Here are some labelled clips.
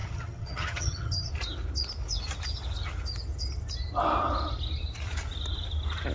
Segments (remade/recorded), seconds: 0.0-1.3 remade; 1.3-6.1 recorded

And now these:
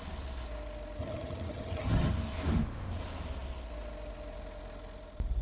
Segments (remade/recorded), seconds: 0.0-1.0 recorded; 1.0-2.1 remade; 2.1-5.4 recorded

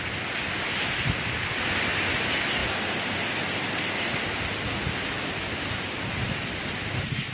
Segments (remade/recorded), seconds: 0.0-7.3 recorded

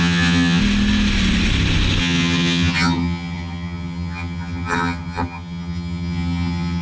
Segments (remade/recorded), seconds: 0.0-0.6 remade; 0.6-2.0 recorded; 2.0-6.8 remade

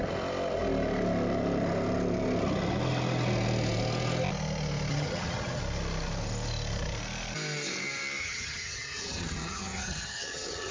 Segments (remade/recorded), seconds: 0.0-4.9 recorded; 4.9-5.6 remade; 5.6-8.2 recorded; 8.2-10.7 remade